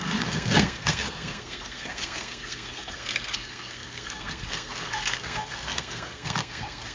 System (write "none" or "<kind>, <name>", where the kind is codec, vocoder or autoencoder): codec, SNAC